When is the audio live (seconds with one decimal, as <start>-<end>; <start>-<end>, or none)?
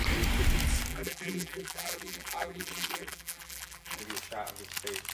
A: 0.0-0.9; 4.0-5.1